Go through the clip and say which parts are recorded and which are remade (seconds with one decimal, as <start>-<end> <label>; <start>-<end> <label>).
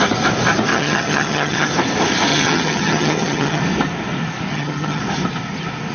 0.0-0.7 recorded; 0.7-1.7 remade; 1.7-2.3 recorded; 2.3-3.6 remade; 3.6-4.5 recorded; 4.5-5.0 remade; 5.0-5.9 recorded